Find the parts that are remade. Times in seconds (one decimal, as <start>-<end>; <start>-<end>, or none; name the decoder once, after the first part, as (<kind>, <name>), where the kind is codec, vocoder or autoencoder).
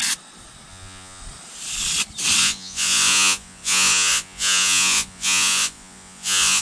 0.7-1.2 (vocoder, Vocos); 2.4-6.6